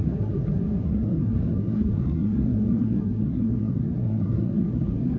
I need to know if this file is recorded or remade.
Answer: remade